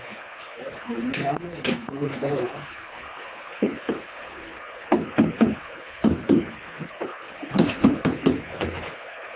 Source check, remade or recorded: remade